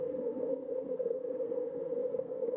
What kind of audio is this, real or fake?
fake